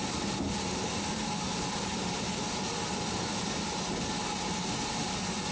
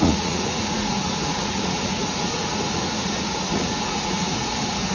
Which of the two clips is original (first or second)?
first